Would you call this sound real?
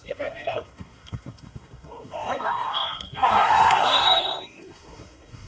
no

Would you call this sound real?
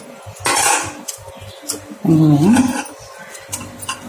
yes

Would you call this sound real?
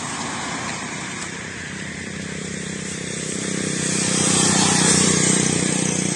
no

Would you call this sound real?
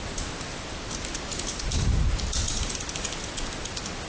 yes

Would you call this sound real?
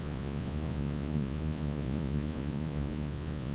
no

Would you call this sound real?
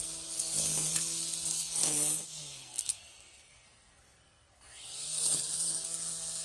no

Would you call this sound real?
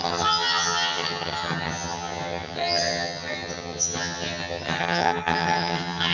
no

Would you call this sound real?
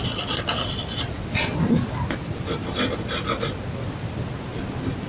yes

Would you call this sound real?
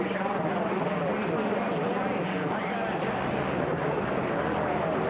yes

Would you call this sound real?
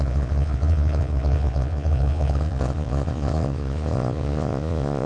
no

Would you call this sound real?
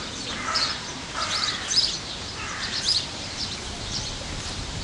no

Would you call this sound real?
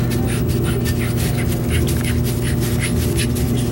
yes